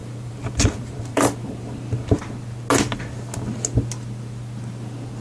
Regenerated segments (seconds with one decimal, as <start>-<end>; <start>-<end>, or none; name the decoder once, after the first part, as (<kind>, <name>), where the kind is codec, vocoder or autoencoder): 0.0-2.2 (vocoder, BigVGAN v2)